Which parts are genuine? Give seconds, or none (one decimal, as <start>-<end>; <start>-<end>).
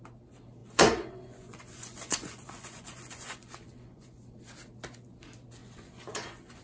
0.0-0.6; 4.2-5.6